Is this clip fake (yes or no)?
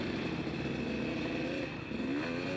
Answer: no